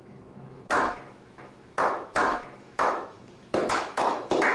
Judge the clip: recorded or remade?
remade